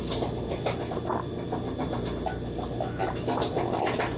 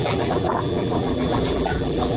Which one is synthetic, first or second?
second